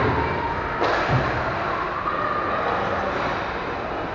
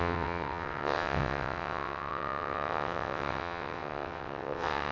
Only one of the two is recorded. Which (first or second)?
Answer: first